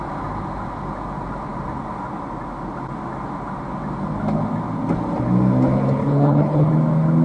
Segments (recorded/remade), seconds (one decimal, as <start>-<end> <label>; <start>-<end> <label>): 0.0-6.0 recorded; 6.0-6.7 remade; 6.7-7.2 recorded